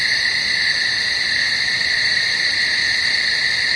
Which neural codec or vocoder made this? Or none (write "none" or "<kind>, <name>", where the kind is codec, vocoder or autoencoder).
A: none